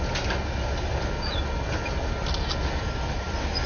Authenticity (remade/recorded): recorded